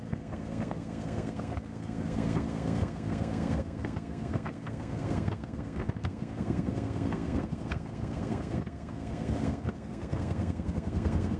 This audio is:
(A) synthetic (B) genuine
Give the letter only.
A